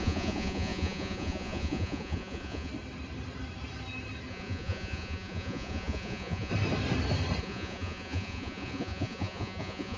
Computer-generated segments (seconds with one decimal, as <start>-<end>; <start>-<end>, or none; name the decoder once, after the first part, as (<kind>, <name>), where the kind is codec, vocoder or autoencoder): 0.0-2.7 (vocoder, Vocos); 4.3-6.5; 7.4-10.0